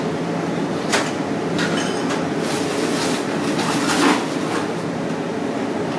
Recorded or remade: recorded